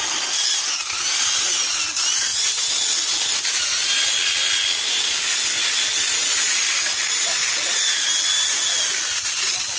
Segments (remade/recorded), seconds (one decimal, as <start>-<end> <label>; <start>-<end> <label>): 0.0-9.8 recorded